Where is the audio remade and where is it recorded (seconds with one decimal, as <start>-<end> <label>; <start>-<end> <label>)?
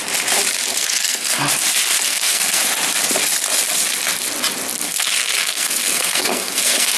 0.0-0.7 recorded; 0.7-1.4 remade; 1.4-1.9 recorded; 1.9-2.6 remade; 2.6-4.8 recorded; 4.8-7.0 remade